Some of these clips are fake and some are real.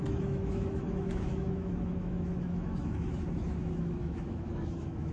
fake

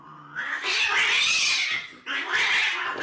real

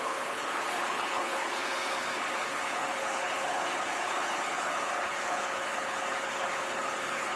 fake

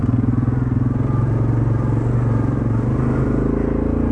real